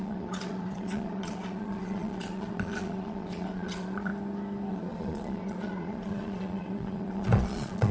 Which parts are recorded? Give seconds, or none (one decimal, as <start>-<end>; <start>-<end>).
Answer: 4.1-4.7